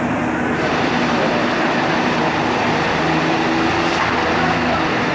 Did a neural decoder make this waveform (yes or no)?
no